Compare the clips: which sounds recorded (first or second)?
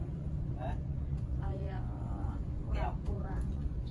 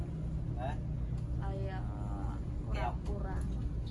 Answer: second